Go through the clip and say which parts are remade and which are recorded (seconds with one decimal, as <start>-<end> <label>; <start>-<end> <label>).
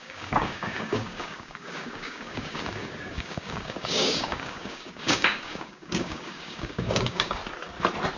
0.0-7.4 remade; 7.4-8.2 recorded